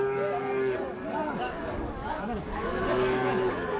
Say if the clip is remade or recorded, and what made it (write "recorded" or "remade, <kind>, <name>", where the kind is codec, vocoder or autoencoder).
remade, codec, DAC